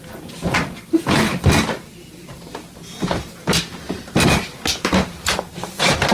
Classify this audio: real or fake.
real